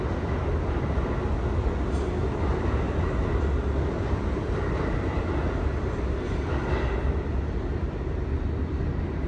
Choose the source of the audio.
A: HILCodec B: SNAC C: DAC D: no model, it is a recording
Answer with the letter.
D